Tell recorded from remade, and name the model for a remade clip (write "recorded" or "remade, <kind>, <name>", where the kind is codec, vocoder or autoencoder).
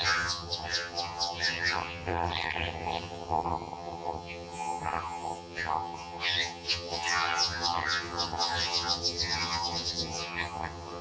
remade, vocoder, HiFi-GAN